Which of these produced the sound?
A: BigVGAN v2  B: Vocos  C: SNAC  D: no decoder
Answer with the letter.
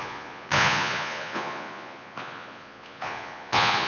B